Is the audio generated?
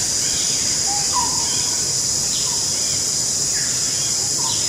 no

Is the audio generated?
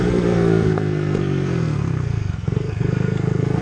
yes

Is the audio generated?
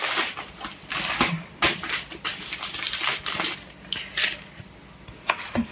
no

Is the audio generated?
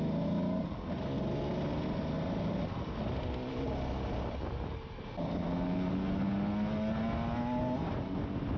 no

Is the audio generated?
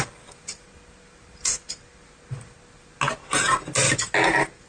no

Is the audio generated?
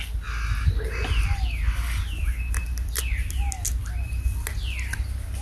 no